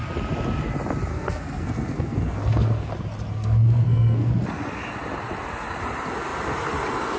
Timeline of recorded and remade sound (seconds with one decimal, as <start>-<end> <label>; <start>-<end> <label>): 0.0-1.1 recorded; 1.1-2.9 remade; 2.9-3.3 recorded; 3.3-4.3 remade; 4.3-7.2 recorded